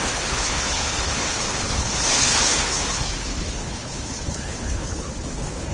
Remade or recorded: remade